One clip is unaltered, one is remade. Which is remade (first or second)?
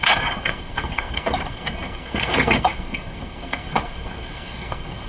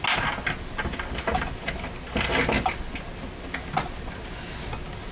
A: first